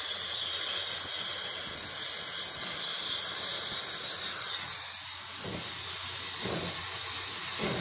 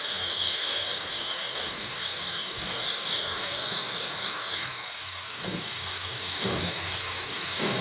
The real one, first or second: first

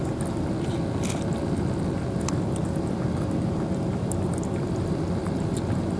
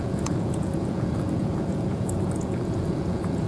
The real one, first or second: first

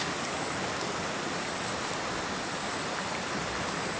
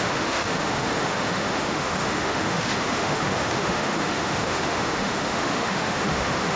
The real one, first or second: first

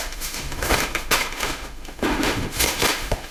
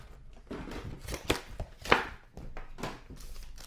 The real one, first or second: second